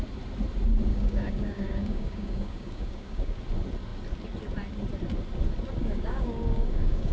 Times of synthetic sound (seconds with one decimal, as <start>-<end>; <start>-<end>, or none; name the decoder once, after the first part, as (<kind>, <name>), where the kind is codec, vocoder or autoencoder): 0.9-3.4 (codec, DAC); 5.8-7.1